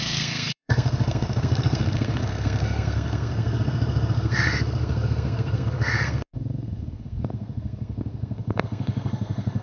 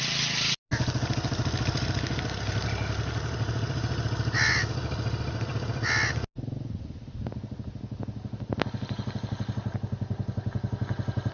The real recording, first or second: second